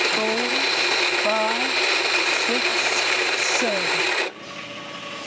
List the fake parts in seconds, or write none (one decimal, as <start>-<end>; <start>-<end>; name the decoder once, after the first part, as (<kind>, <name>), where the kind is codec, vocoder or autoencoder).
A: 2.7-4.5 (vocoder, BigVGAN v2)